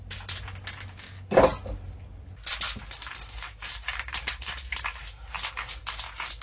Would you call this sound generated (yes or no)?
no